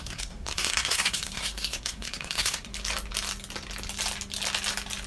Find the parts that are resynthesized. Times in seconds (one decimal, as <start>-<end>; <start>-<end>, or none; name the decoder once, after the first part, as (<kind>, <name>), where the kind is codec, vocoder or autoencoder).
0.0-2.7 (codec, SNAC)

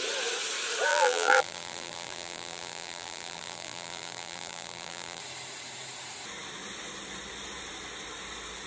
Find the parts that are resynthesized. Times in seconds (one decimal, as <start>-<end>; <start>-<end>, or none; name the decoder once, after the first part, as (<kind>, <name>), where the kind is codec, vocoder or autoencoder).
0.9-5.2 (vocoder, BigVGAN v2)

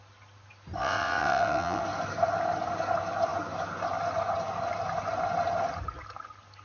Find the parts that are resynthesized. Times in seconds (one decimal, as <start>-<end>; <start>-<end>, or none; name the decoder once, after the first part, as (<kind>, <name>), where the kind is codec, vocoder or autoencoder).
0.8-1.8 (vocoder, WaveNeXt)

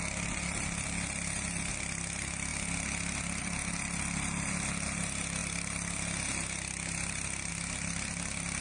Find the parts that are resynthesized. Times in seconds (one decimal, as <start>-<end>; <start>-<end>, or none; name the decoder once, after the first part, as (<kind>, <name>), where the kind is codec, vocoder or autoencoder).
0.0-2.5 (vocoder, BigVGAN v2); 3.4-5.4; 7.5-8.6

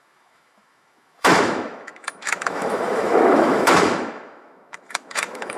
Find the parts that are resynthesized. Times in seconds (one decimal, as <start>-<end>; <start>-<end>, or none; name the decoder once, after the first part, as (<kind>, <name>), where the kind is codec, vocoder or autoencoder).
0.0-5.6 (autoencoder, DAC-VAE)

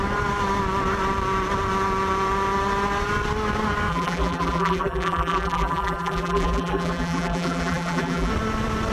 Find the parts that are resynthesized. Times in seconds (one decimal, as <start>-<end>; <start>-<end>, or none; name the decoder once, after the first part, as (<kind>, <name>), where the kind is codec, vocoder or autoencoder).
3.9-8.3 (vocoder, BigVGAN v2)

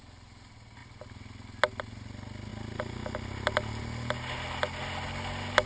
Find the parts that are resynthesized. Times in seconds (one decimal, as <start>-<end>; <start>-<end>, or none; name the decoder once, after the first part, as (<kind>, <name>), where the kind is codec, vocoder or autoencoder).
none